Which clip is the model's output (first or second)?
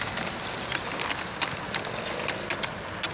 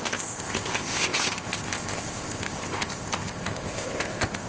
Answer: second